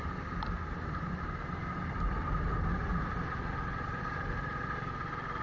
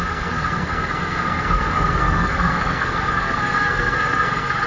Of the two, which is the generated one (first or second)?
second